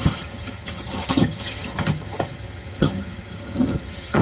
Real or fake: fake